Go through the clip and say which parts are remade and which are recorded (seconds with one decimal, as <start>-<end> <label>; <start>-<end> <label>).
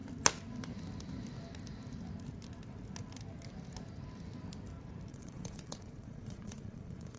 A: 0.0-5.1 recorded; 5.1-7.2 remade